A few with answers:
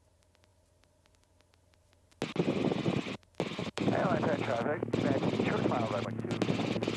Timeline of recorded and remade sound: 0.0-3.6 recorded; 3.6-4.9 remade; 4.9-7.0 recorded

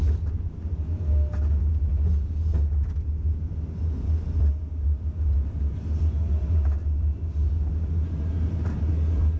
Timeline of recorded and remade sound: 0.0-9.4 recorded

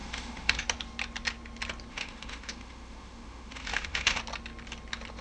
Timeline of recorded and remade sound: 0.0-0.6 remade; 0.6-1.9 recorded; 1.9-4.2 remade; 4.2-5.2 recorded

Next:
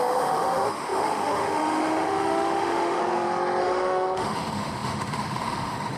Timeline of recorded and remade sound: 0.0-3.0 remade; 3.0-3.6 recorded; 3.6-6.0 remade

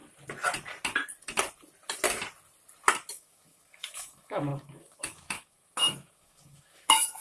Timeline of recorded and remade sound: 0.0-3.1 recorded; 3.1-7.2 remade